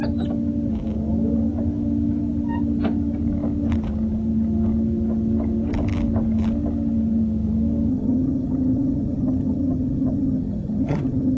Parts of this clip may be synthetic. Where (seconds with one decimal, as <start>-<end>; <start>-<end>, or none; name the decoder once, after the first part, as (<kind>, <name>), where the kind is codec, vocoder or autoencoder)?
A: 7.9-11.4 (vocoder, HiFi-GAN)